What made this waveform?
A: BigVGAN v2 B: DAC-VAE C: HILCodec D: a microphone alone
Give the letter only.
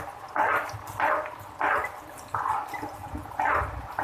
D